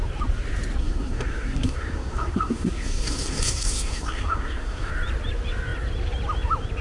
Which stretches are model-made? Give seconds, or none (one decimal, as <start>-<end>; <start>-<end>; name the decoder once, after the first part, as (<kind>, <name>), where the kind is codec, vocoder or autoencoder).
0.8-4.9 (codec, SNAC)